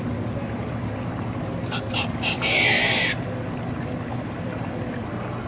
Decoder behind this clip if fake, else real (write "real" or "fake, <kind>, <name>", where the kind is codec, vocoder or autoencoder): real